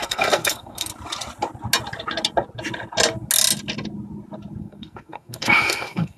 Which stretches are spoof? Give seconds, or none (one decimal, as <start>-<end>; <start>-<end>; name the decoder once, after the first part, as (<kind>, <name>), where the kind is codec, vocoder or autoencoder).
0.0-0.9 (codec, SNAC); 4.6-6.2

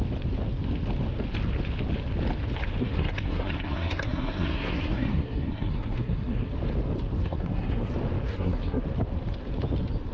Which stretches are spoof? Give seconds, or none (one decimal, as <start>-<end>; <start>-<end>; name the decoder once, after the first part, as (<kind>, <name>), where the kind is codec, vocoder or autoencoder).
2.8-6.5 (codec, SNAC); 7.2-7.9; 8.3-8.8

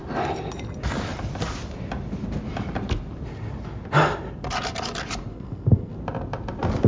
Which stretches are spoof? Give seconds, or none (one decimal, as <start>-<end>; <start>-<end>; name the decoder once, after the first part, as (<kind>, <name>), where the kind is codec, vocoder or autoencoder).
5.3-5.9 (codec, SNAC)

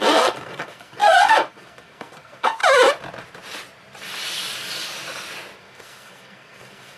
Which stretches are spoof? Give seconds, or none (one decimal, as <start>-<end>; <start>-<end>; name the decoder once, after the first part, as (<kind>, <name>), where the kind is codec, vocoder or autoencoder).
0.0-2.6 (codec, SNAC); 5.6-7.0

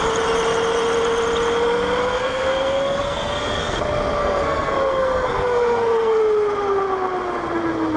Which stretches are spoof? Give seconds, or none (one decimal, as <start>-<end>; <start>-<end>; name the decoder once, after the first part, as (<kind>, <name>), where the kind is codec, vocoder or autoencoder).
2.0-3.8 (codec, SNAC); 4.2-6.2

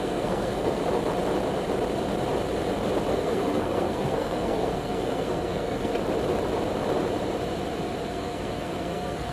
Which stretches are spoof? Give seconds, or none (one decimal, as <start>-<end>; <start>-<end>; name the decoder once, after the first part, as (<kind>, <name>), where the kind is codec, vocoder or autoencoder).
0.0-0.8 (codec, SNAC); 3.1-5.9; 8.0-9.3

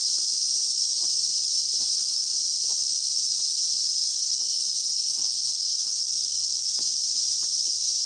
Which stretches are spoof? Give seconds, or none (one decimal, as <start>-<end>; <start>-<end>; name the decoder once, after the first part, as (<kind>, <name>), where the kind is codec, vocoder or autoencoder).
4.0-6.8 (codec, SNAC)